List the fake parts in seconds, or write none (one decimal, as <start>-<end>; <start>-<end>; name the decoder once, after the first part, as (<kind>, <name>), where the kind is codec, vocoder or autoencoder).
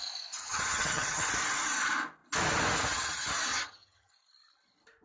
0.4-1.3 (vocoder, HiFi-GAN); 3.5-4.1